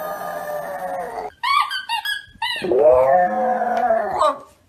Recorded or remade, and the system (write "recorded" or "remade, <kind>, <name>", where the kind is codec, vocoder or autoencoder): recorded